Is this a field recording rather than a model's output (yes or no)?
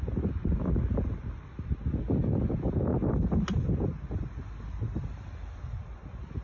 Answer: yes